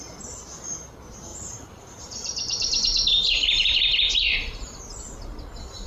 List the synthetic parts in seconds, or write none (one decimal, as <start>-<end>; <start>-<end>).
1.3-4.8